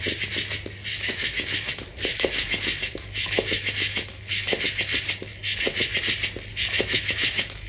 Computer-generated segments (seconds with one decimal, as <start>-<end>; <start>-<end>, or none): 0.9-4.6; 6.5-7.7